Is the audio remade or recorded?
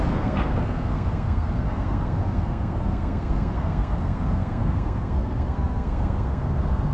remade